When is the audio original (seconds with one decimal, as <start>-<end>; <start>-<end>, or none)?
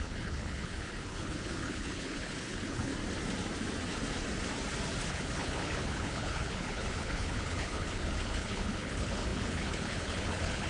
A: 2.9-5.1